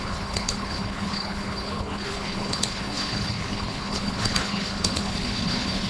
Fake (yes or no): yes